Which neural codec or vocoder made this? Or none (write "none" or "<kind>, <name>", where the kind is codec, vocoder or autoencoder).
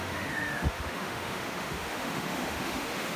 autoencoder, DAC-VAE